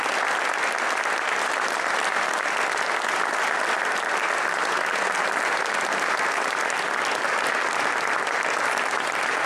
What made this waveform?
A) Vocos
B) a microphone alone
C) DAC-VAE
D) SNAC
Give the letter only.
B